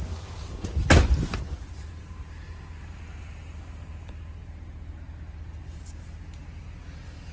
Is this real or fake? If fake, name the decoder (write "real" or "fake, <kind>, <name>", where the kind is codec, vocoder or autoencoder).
real